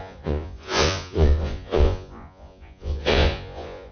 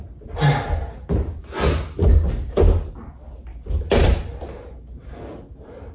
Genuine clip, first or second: second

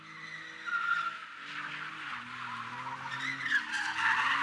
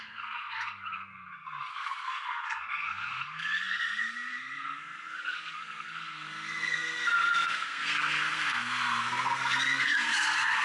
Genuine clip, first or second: first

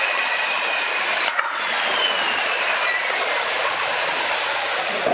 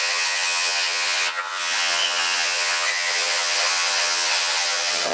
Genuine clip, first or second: first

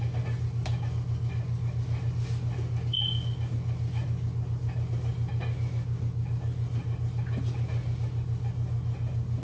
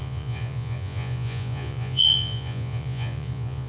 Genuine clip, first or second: first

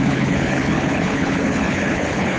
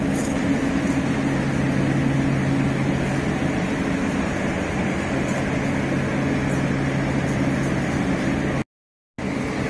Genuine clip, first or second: second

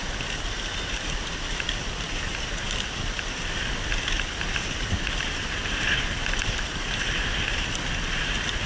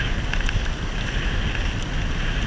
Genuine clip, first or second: second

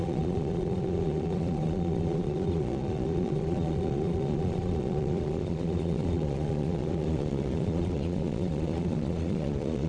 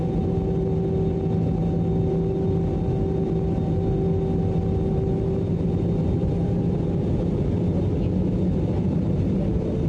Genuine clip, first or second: second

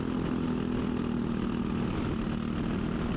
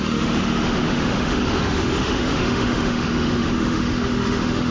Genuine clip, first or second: first